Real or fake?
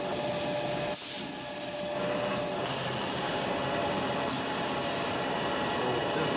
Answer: real